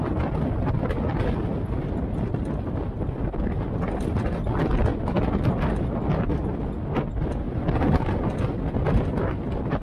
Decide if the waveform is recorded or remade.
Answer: recorded